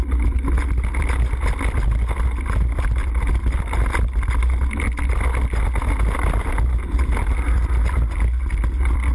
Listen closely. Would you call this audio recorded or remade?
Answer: recorded